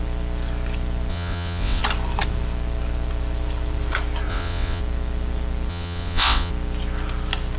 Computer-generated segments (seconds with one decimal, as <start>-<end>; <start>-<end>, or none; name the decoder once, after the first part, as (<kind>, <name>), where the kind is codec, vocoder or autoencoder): 1.1-1.8 (vocoder, WaveNeXt); 4.3-4.8; 5.7-6.5